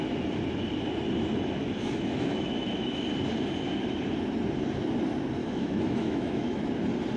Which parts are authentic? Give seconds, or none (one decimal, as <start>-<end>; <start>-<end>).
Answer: 0.0-1.6; 3.0-5.4; 6.6-7.2